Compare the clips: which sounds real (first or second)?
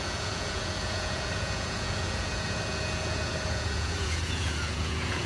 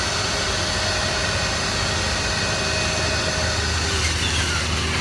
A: second